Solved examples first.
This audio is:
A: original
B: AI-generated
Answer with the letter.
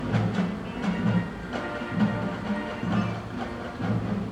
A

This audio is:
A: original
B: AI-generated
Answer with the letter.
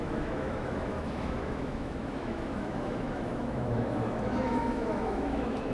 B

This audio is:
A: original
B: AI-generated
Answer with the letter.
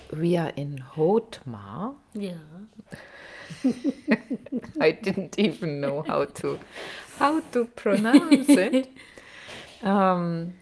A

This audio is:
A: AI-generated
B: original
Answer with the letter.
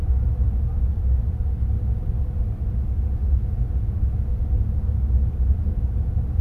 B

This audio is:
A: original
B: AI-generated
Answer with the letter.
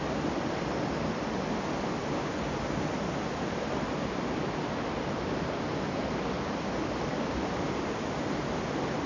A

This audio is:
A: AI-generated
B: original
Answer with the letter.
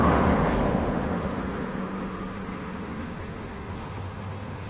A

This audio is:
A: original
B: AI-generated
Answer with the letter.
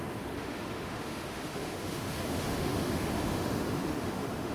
B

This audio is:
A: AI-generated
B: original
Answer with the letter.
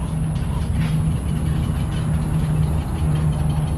B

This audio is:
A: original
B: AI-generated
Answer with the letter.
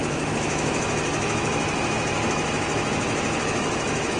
B